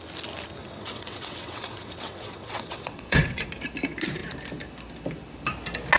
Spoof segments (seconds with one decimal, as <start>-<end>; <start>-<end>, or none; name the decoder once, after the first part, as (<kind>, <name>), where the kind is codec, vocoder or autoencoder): 0.6-3.5 (vocoder, WaveNeXt)